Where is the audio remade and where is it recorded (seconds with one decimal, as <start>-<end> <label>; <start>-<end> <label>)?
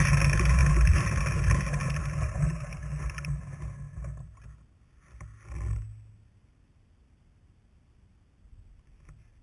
0.0-0.6 recorded; 0.6-1.2 remade; 1.2-1.8 recorded; 1.8-2.4 remade; 2.4-2.8 recorded; 2.8-4.3 remade; 4.3-9.4 recorded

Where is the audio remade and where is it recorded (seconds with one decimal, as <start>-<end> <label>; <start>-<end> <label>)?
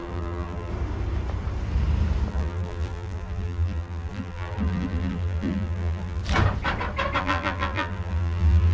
0.0-0.7 remade; 0.7-2.3 recorded; 2.3-6.2 remade; 6.2-7.2 recorded; 7.2-8.7 remade